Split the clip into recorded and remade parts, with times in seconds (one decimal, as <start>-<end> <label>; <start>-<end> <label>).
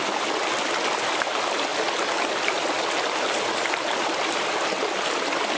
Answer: 0.0-5.6 recorded